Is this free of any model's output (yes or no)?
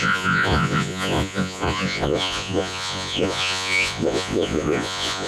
no